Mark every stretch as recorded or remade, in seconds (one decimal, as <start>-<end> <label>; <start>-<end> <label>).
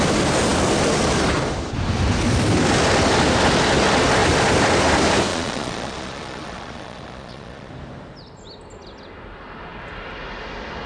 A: 0.0-5.3 recorded; 5.3-7.7 remade; 7.7-10.9 recorded